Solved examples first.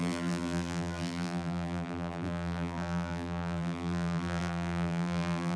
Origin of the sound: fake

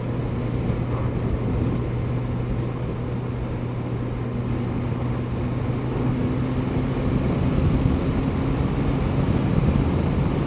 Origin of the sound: real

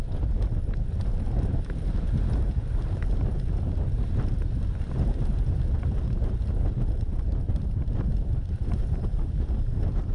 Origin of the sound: fake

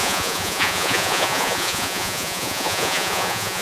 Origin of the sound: fake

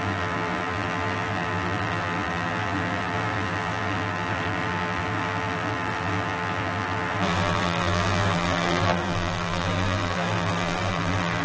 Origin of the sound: fake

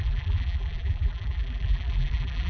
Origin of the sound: fake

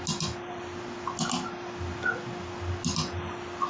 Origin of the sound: real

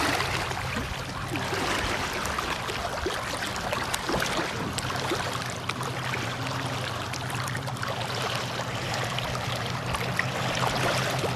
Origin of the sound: real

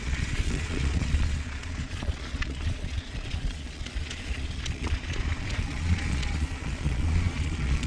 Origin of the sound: fake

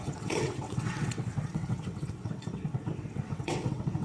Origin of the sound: fake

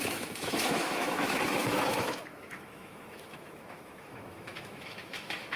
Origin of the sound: fake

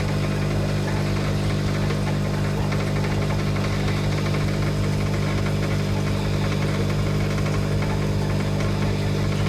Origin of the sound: real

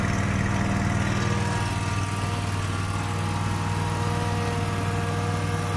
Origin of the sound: real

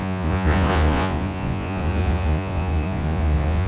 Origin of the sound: fake